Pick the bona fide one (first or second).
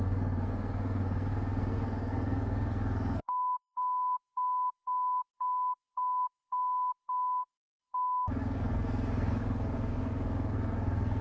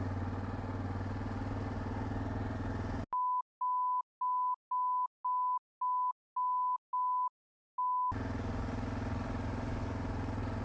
second